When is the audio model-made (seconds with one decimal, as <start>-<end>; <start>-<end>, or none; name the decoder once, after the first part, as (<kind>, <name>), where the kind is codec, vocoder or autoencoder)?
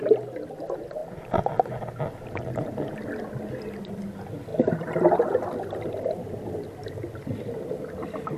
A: none